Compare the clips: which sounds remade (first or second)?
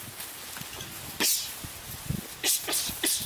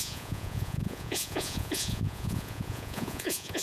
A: second